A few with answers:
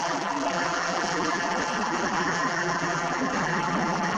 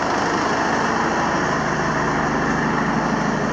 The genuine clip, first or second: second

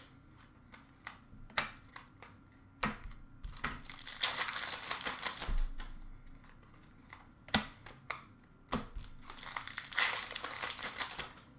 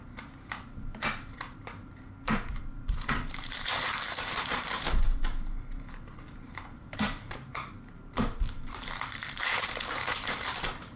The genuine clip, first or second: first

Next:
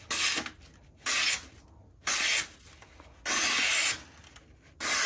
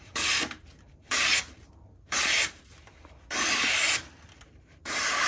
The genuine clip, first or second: first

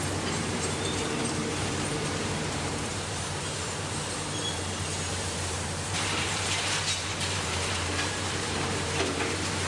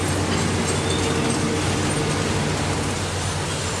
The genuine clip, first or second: second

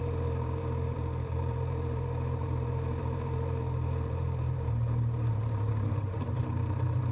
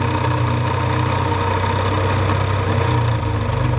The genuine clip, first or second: second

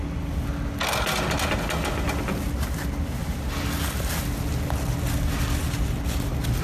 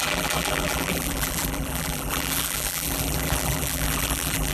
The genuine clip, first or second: first